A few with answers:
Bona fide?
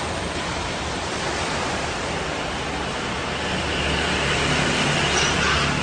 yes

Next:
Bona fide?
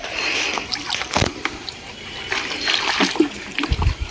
yes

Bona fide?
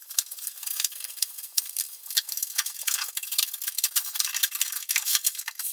no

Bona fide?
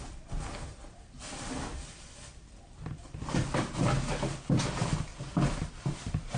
yes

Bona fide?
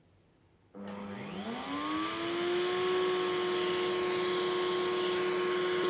yes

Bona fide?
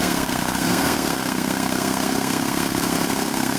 no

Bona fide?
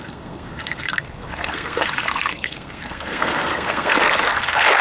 no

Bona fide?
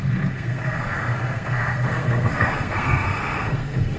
no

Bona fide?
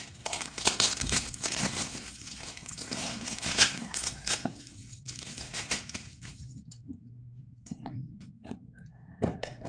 no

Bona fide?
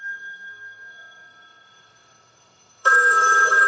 no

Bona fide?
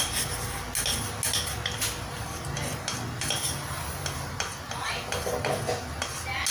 yes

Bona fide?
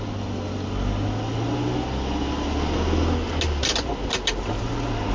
yes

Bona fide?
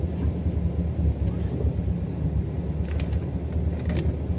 yes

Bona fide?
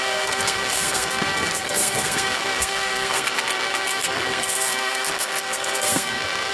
no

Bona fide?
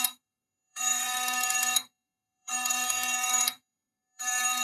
no